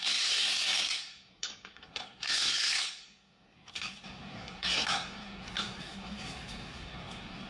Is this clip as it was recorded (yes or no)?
no